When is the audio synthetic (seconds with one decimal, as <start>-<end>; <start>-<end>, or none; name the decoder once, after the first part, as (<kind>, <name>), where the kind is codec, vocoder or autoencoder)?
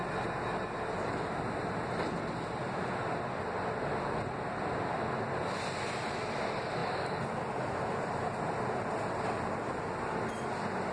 none